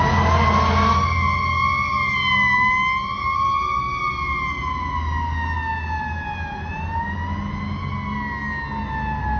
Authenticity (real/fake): real